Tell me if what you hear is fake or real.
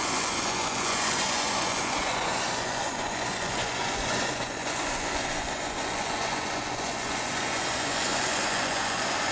fake